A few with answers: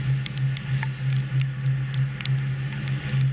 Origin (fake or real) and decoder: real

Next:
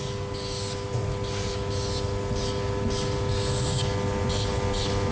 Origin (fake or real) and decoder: real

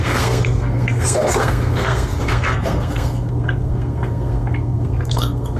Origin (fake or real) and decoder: fake, codec, SNAC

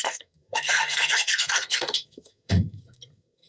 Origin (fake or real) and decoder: fake, codec, SNAC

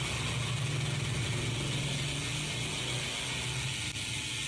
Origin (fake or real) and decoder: real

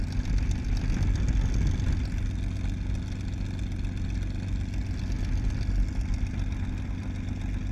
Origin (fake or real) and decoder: real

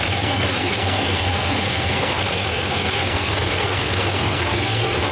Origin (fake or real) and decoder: fake, codec, SNAC